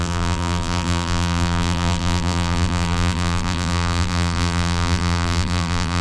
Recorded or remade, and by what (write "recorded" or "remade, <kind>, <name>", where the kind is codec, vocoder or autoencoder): remade, vocoder, BigVGAN v2